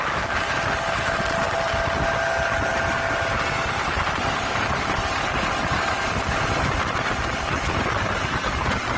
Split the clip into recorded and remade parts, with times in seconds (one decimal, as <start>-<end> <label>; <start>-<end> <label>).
0.0-9.0 recorded